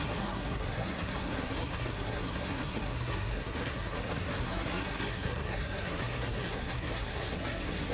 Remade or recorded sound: remade